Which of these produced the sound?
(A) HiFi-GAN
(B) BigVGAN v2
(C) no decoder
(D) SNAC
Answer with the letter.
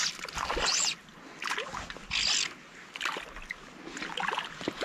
C